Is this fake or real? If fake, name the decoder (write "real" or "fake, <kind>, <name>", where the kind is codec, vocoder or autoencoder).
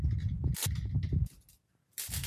real